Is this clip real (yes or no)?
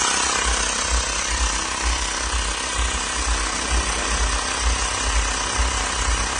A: yes